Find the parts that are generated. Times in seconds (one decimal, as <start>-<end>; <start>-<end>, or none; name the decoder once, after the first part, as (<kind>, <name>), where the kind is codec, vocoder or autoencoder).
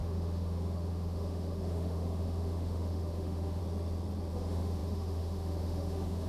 0.0-3.6 (autoencoder, DAC-VAE); 4.3-6.3